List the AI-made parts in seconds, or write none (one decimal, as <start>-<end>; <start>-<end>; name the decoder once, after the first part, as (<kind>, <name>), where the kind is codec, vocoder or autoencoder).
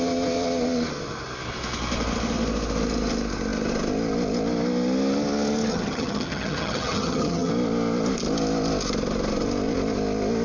5.7-7.5 (vocoder, HiFi-GAN)